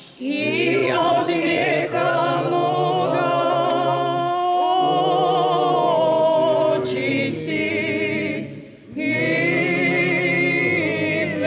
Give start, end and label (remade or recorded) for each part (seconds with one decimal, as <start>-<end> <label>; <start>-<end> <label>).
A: 0.0-0.8 recorded; 0.8-1.8 remade; 1.8-11.5 recorded